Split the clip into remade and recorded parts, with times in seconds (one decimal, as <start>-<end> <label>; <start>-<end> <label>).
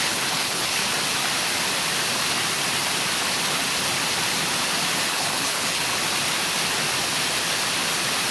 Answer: 0.0-0.8 remade; 0.8-5.1 recorded; 5.1-5.8 remade; 5.8-8.3 recorded